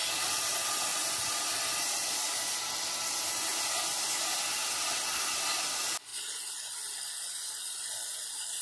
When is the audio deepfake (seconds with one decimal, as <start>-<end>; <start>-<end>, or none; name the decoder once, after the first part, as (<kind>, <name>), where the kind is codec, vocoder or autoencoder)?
0.0-0.5 (vocoder, BigVGAN v2); 0.9-1.8; 3.5-4.4; 6.1-7.1